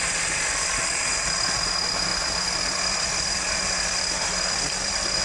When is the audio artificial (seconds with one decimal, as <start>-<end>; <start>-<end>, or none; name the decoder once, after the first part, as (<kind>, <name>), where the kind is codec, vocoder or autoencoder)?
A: 2.1-5.2 (vocoder, BigVGAN v2)